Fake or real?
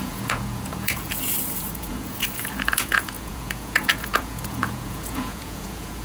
fake